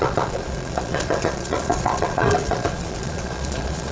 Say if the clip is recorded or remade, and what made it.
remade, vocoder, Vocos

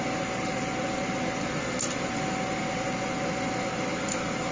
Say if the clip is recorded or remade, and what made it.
recorded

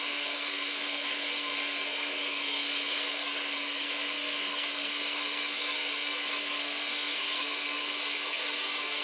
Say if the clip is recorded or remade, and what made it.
remade, codec, SNAC